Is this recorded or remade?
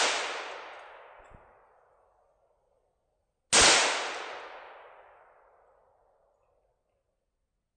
recorded